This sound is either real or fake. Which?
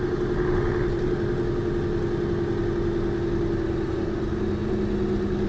real